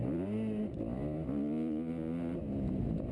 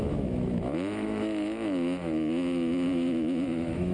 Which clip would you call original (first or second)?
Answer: first